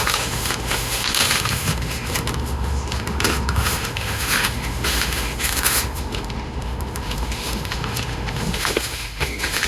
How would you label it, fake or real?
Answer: fake